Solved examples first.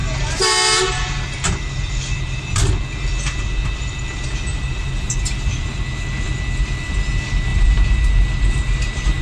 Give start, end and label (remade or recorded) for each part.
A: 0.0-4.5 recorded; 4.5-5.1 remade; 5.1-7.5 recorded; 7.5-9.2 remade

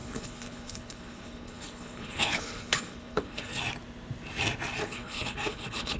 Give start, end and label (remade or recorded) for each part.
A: 0.0-3.6 remade; 3.6-4.8 recorded; 4.8-6.0 remade

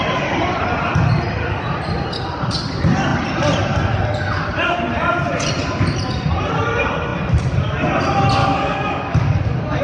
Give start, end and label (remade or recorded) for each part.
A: 0.0-8.4 recorded; 8.4-9.8 remade

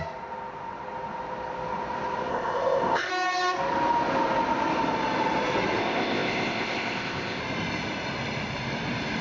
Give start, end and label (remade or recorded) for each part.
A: 0.0-2.3 recorded; 2.3-3.1 remade; 3.1-5.8 recorded; 5.8-7.4 remade; 7.4-9.2 recorded

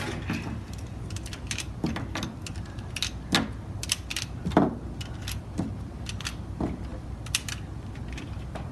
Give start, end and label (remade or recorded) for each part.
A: 0.0-8.7 recorded

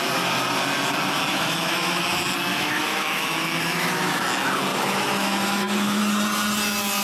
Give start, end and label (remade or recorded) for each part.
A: 0.0-1.3 recorded; 1.3-2.0 remade; 2.0-2.5 recorded; 2.5-4.2 remade; 4.2-4.7 recorded; 4.7-6.0 remade; 6.0-7.0 recorded